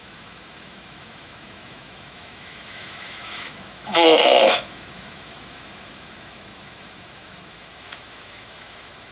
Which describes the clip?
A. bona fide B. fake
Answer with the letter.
B